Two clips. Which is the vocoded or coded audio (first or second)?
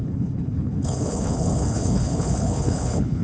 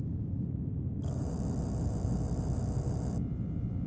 first